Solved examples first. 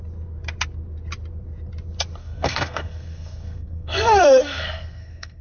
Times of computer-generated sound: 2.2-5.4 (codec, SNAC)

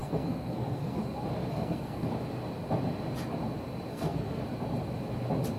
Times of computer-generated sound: 0.0-1.0 (codec, SNAC); 1.5-2.1; 3.9-4.4

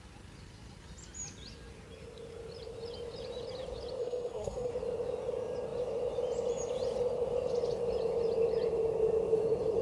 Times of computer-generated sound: 4.0-4.7 (codec, SNAC)

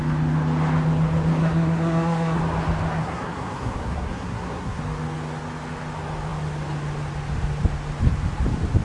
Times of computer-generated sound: 1.4-2.4 (codec, SNAC); 3.0-4.8

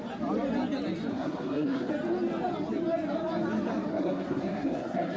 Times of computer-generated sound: 1.1-1.9 (codec, SNAC); 3.9-5.2

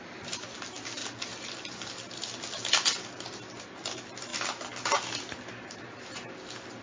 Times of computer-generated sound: none

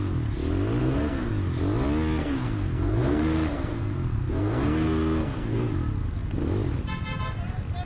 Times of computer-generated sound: 0.8-1.3 (codec, SNAC); 2.2-5.8

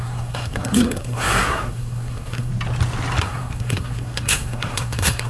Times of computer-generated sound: 0.0-2.5 (codec, SNAC); 3.2-5.3